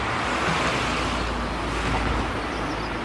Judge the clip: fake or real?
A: real